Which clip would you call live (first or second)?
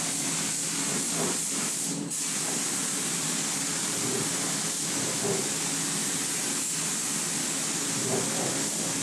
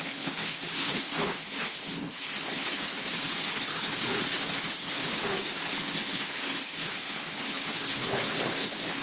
first